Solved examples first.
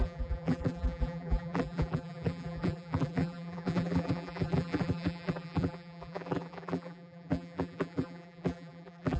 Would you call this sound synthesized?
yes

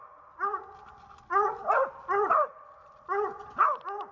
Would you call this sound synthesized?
no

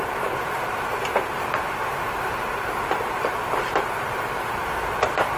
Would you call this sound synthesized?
yes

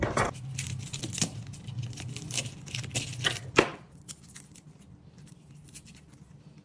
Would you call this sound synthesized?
no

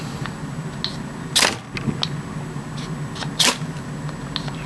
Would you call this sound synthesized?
no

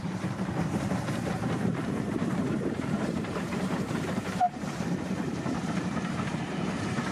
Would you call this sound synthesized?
yes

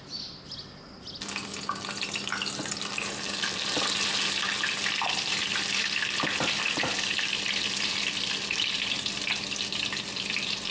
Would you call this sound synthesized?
no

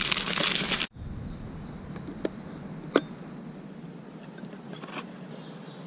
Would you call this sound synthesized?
no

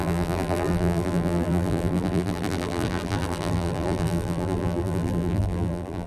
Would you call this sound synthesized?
yes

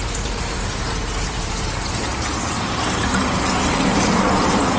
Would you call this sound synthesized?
yes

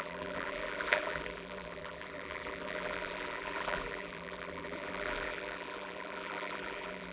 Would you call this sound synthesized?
yes